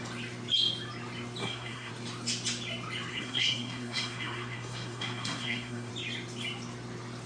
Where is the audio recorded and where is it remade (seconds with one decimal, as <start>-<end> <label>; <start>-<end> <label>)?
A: 0.0-1.4 recorded; 1.4-1.9 remade; 1.9-3.1 recorded; 3.1-5.9 remade; 5.9-7.3 recorded